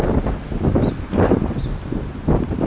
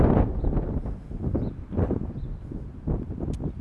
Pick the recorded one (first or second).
second